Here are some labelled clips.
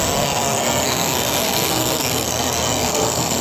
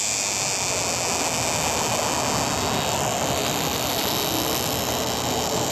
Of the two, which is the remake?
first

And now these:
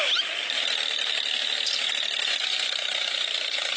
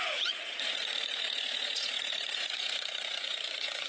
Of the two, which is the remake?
second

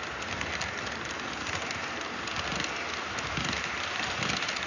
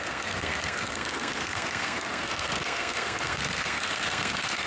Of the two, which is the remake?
second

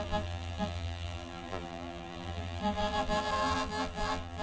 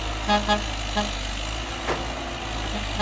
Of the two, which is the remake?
first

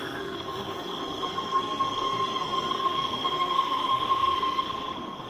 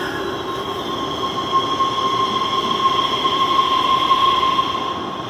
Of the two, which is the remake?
first